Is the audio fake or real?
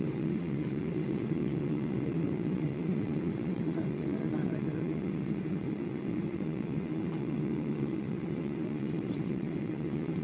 fake